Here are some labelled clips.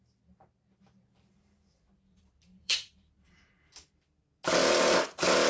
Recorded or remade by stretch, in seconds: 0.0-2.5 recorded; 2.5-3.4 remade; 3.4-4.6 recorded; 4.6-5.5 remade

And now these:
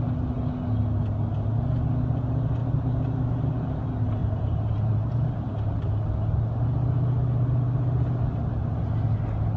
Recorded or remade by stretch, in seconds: 0.0-4.2 recorded; 4.2-5.9 remade; 5.9-9.6 recorded

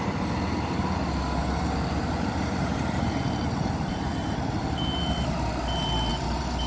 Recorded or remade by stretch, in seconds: 0.0-1.4 recorded; 1.4-4.6 remade; 4.6-6.1 recorded; 6.1-6.7 remade

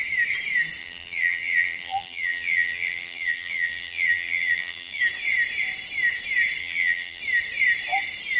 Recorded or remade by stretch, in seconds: 0.0-0.8 recorded; 0.8-5.0 remade; 5.0-6.6 recorded; 6.6-7.2 remade; 7.2-8.4 recorded